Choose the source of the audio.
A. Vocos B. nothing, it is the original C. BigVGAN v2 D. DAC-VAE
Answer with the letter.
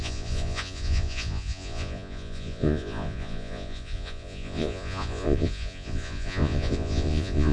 A